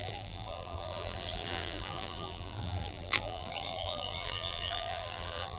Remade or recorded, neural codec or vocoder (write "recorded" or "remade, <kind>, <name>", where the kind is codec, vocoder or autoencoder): remade, vocoder, BigVGAN v2